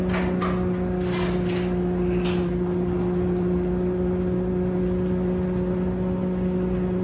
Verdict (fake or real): real